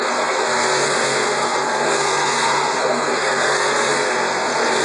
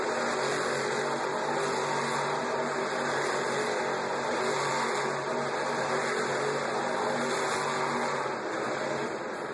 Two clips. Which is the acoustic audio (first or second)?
second